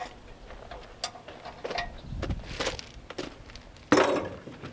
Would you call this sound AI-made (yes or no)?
no